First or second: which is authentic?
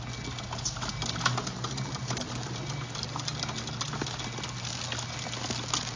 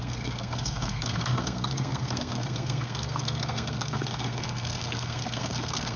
first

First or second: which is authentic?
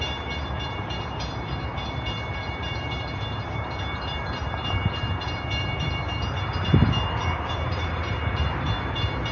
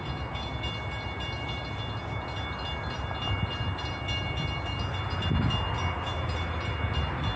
second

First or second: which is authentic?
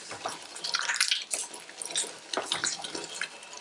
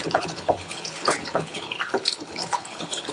first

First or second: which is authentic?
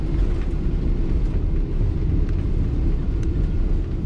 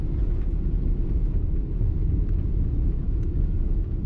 first